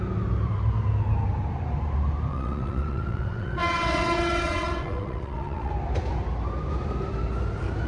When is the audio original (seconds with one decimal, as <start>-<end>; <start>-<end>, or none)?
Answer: 0.0-2.3; 5.7-7.9